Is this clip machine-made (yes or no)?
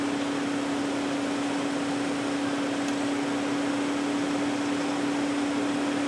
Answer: no